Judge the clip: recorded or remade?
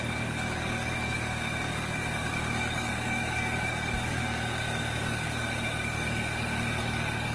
remade